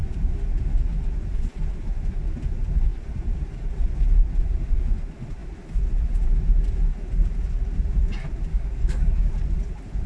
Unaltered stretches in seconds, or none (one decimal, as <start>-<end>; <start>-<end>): 0.0-8.5; 9.3-10.1